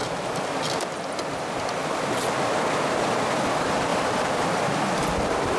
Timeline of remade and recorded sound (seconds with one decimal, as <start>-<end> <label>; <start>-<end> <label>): 0.0-3.9 recorded; 3.9-4.6 remade; 4.6-5.6 recorded

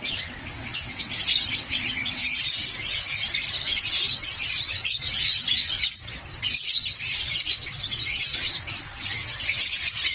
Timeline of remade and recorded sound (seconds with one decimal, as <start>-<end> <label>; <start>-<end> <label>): 0.0-2.2 remade; 2.2-3.5 recorded; 3.5-10.1 remade

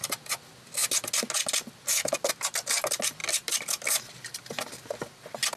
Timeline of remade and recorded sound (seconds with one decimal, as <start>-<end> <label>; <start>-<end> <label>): 0.0-5.6 recorded